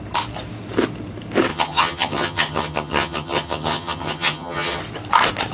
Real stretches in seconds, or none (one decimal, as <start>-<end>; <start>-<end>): 0.0-1.5; 4.8-5.5